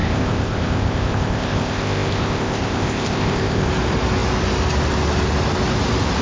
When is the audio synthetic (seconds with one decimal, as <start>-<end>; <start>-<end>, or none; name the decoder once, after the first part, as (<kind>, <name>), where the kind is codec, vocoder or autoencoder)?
0.0-3.7 (codec, ZipCodec)